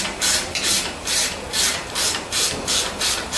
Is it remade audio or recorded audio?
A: remade